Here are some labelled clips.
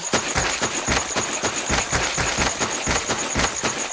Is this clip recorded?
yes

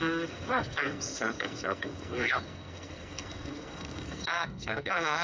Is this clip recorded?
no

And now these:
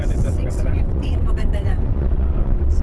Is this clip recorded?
no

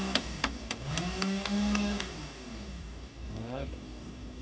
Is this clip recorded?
no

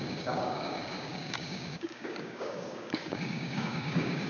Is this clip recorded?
no